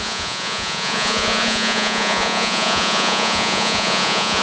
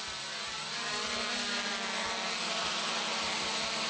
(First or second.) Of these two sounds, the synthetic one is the first